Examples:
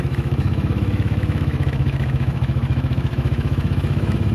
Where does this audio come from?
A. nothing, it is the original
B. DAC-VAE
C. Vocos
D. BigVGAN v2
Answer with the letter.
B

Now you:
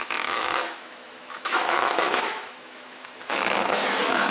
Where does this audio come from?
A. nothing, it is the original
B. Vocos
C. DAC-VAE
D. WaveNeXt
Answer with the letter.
C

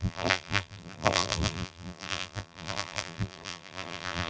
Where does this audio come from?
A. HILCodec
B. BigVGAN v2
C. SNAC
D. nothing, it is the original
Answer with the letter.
B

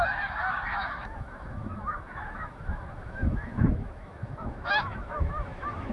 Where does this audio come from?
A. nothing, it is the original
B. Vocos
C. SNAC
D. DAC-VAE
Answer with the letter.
D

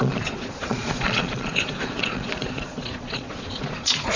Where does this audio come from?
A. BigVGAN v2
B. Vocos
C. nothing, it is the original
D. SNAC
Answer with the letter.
B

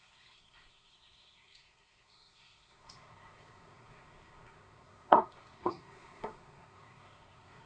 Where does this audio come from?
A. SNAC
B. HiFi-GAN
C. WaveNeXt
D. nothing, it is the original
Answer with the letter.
A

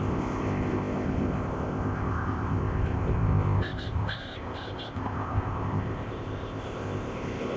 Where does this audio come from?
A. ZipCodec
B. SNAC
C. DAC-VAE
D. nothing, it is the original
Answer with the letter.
A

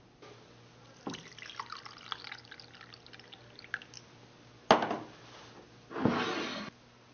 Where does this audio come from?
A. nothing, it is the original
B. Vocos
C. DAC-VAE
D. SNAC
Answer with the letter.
A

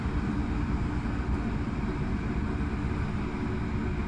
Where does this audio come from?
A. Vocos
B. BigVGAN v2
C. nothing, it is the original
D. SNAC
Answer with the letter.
C